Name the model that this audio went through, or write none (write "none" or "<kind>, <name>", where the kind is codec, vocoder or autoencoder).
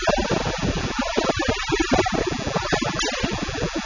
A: none